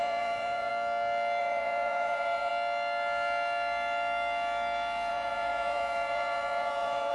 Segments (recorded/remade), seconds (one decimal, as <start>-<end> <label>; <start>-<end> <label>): 0.0-0.7 remade; 0.7-1.4 recorded; 1.4-2.5 remade; 2.5-5.1 recorded; 5.1-7.1 remade